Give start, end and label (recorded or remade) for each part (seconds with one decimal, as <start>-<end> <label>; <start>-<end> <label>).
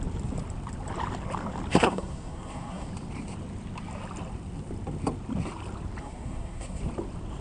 0.0-1.7 recorded; 1.7-2.9 remade; 2.9-6.0 recorded; 6.0-6.8 remade; 6.8-7.4 recorded